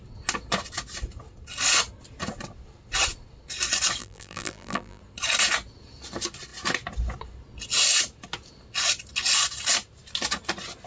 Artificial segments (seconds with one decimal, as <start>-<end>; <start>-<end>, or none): 4.0-5.0